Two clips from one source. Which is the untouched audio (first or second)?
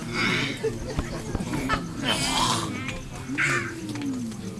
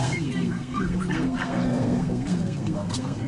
first